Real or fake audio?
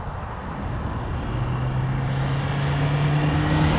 real